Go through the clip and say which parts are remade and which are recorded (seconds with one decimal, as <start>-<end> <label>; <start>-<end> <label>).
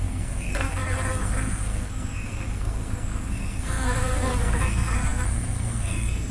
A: 0.0-6.3 remade